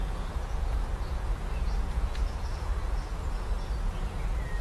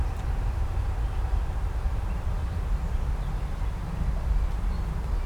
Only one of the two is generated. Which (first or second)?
first